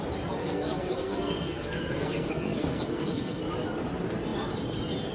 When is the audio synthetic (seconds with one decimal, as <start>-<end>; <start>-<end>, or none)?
0.4-3.4